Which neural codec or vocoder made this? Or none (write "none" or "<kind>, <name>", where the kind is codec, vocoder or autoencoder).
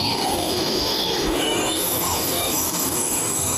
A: codec, DAC